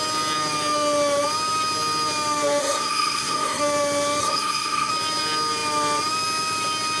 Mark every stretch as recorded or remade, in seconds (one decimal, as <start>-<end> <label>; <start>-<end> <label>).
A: 0.0-2.6 recorded; 2.6-3.6 remade; 3.6-4.2 recorded; 4.2-4.9 remade; 4.9-7.0 recorded